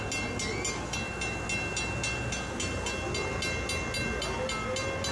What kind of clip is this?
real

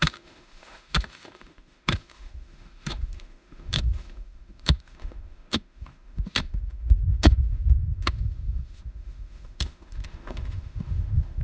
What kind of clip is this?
fake